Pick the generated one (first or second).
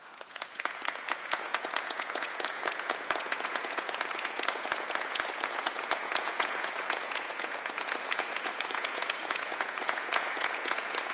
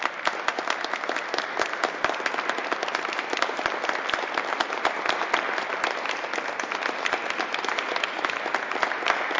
first